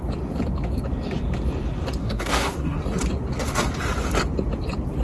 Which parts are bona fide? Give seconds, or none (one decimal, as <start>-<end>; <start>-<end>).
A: 0.0-2.0; 2.8-5.0